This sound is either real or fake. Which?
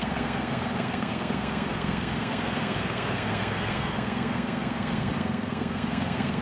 fake